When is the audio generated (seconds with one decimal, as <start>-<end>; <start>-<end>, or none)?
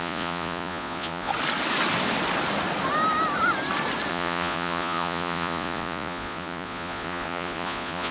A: 0.0-1.3; 4.1-8.1